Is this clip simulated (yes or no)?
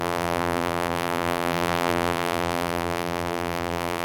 yes